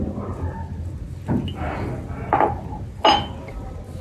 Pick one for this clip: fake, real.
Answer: real